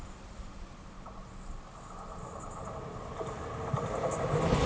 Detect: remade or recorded recorded